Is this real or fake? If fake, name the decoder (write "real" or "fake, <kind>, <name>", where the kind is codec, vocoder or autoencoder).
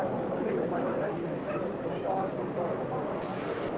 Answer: real